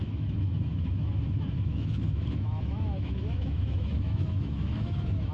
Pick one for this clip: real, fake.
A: fake